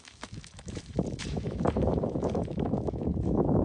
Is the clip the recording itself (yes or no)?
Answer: no